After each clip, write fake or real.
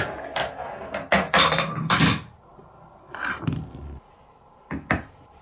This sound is real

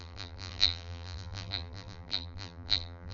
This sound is fake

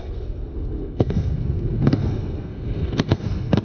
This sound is fake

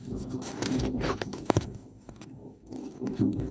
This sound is fake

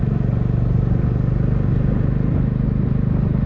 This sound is real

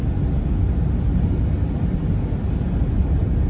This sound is real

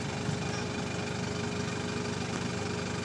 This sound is real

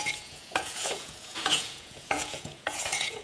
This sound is fake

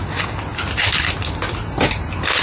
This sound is real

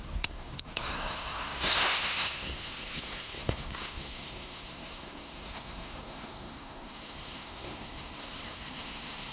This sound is fake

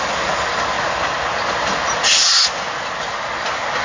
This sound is real